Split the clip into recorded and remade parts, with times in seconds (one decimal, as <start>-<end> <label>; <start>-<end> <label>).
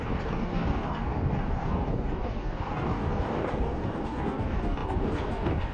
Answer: 0.0-5.7 remade